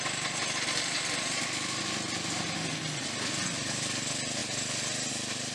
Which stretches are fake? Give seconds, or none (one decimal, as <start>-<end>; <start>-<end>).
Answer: none